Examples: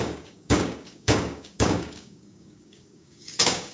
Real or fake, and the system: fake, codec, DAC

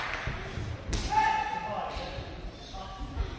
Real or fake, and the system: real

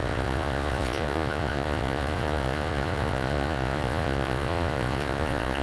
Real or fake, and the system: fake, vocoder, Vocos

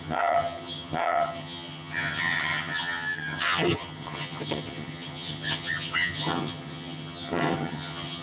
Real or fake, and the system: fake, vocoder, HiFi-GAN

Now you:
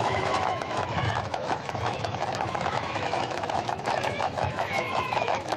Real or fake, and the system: fake, autoencoder, DAC-VAE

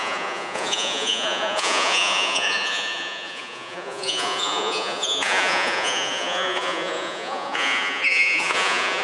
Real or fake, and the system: fake, vocoder, Vocos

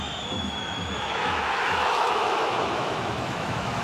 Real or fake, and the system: fake, autoencoder, DAC-VAE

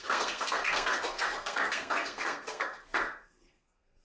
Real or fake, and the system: fake, codec, SNAC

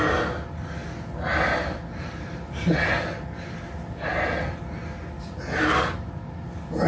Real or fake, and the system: real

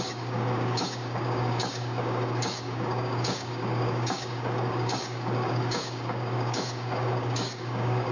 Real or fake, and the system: fake, codec, DAC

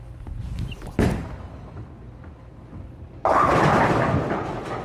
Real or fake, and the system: real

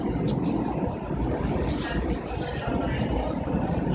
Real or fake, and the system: real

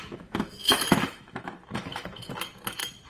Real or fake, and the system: fake, autoencoder, DAC-VAE